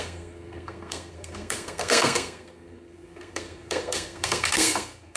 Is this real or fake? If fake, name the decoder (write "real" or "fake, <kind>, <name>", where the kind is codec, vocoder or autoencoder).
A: fake, codec, SNAC